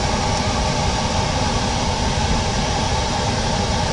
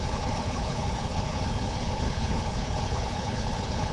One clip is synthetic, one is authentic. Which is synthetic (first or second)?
second